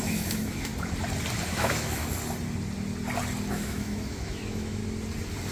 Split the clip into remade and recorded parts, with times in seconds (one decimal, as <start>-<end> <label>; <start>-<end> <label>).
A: 0.0-0.7 remade; 0.7-1.5 recorded; 1.5-2.0 remade; 2.0-3.5 recorded; 3.5-4.8 remade; 4.8-5.5 recorded